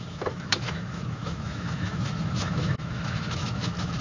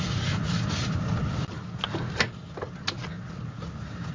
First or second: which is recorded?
second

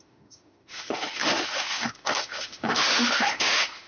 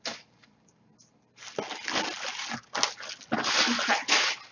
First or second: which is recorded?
second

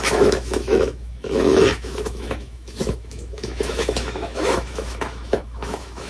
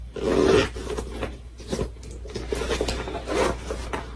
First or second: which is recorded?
second